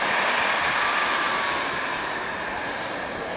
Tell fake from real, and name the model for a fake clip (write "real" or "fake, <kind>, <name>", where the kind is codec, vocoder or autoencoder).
real